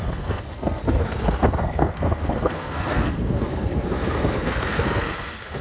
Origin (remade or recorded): remade